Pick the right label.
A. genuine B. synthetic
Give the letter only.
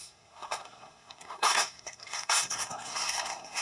B